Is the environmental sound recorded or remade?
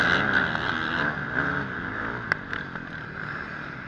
recorded